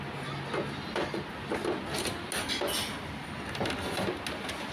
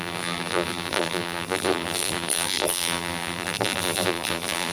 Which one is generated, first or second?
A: second